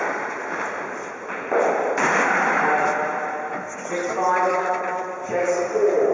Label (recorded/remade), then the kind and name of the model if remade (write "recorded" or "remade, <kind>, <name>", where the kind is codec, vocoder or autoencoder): recorded